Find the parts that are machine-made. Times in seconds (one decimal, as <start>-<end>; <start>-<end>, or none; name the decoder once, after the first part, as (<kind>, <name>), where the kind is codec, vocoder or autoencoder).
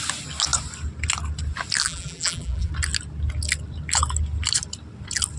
1.8-2.7 (vocoder, BigVGAN v2)